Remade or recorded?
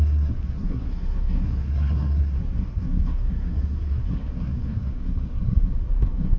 remade